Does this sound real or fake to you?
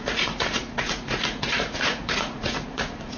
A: fake